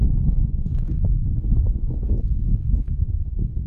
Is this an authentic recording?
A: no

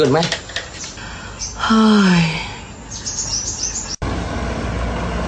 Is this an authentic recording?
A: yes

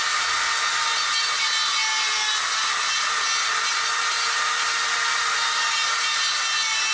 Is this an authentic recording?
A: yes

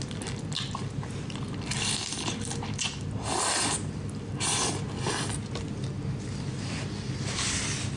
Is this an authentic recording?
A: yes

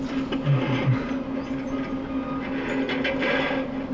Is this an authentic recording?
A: yes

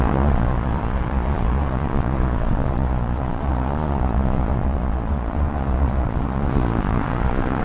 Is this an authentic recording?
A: no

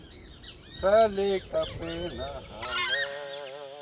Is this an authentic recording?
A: yes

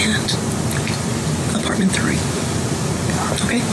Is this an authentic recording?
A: yes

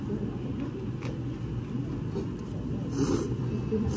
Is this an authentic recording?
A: yes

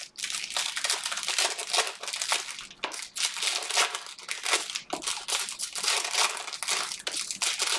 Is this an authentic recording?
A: yes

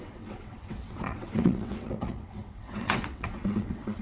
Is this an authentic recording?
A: no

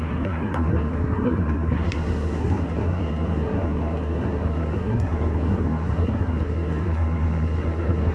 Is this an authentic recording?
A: no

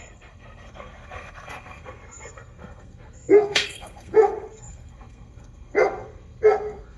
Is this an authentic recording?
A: no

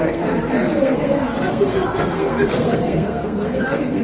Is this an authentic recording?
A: no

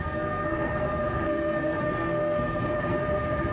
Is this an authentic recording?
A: no